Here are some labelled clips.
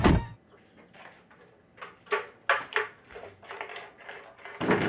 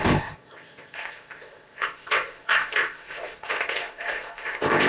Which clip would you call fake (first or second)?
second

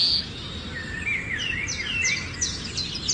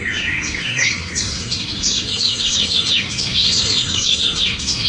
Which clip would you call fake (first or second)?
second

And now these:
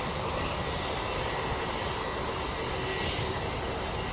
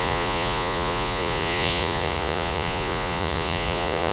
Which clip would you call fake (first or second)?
second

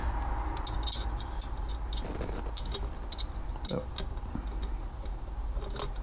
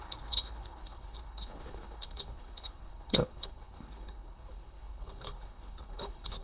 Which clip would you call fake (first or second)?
second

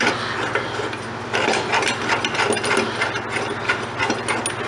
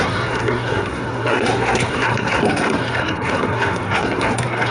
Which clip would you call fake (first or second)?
second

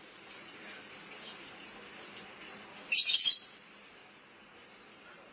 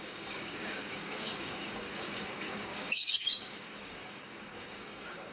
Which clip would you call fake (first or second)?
second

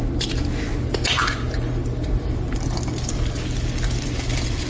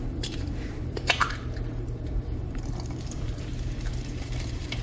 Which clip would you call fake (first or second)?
second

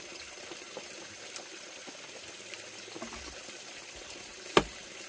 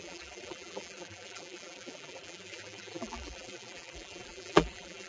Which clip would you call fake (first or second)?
second